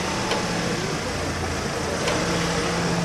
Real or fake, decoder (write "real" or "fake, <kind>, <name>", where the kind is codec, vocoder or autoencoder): real